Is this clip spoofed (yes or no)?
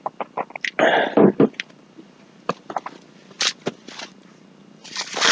no